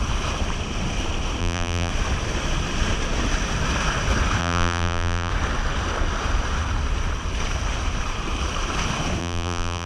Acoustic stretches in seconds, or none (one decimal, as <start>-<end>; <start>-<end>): 0.0-1.4; 1.9-4.4; 5.3-9.2